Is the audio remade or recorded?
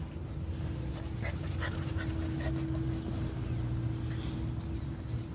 recorded